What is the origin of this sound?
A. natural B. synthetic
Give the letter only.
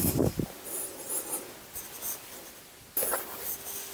A